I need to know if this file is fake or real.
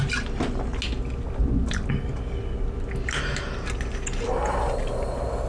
real